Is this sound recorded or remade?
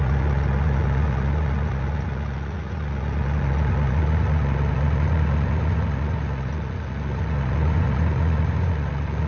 remade